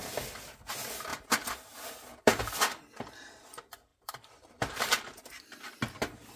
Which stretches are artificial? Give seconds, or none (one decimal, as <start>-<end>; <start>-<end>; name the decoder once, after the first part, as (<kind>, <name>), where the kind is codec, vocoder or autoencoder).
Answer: 1.1-2.4 (vocoder, BigVGAN v2); 3.9-5.2